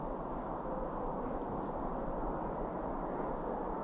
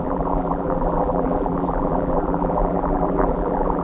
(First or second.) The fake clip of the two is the second